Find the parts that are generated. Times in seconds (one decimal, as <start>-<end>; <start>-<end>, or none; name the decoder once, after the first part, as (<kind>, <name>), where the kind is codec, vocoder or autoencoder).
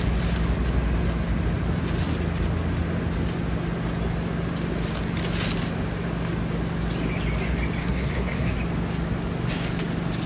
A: 7.8-8.6 (codec, SNAC)